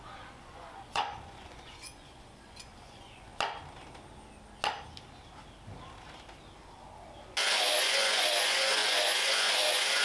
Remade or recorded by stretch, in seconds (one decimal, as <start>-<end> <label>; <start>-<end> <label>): 0.0-3.3 remade; 3.3-7.5 recorded; 7.5-10.0 remade